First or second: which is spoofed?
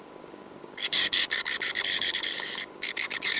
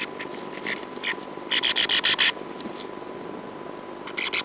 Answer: first